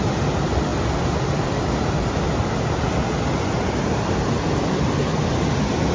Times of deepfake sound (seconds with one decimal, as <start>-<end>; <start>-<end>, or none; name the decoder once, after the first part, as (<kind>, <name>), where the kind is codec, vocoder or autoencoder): none